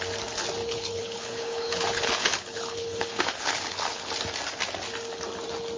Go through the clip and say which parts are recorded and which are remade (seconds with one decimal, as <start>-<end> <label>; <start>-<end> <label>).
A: 0.0-0.6 recorded; 0.6-4.1 remade; 4.1-5.8 recorded